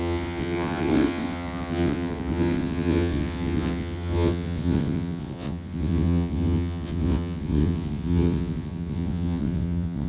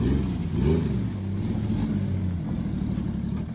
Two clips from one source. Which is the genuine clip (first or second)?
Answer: second